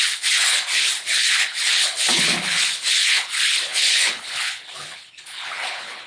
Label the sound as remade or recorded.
remade